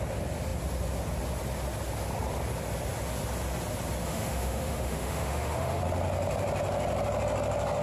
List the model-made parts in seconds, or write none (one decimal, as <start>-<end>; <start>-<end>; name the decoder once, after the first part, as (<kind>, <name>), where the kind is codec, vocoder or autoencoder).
4.0-5.8 (autoencoder, DAC-VAE)